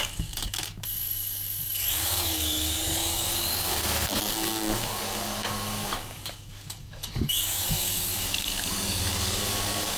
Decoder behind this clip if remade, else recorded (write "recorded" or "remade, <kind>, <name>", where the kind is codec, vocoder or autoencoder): remade, codec, DAC